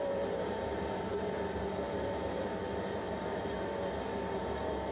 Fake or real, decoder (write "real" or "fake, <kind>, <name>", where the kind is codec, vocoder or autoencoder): fake, vocoder, BigVGAN v2